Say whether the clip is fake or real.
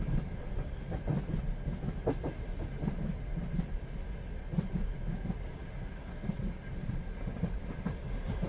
real